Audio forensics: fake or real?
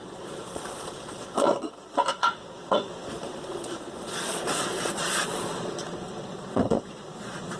fake